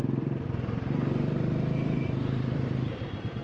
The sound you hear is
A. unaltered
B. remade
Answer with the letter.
B